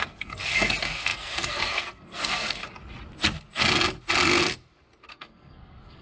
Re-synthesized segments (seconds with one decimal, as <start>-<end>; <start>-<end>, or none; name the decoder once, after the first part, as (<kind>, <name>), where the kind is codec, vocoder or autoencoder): 0.0-2.6 (codec, SNAC); 5.1-6.0